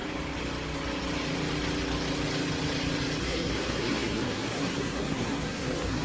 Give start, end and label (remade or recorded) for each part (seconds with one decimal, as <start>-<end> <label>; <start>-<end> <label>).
0.0-3.2 recorded; 3.2-6.0 remade